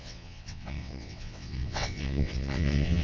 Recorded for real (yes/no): no